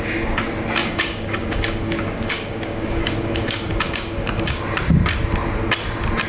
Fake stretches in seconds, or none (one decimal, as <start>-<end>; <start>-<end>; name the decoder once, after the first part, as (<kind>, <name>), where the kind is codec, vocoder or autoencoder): 0.8-4.6 (codec, DAC)